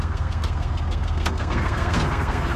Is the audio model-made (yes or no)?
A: yes